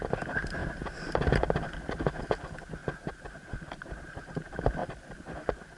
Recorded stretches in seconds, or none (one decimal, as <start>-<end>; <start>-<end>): 0.0-5.8